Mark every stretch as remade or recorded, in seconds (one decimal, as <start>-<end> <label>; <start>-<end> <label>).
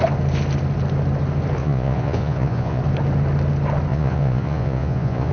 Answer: 0.0-1.6 recorded; 1.6-2.8 remade; 2.8-3.9 recorded; 3.9-5.3 remade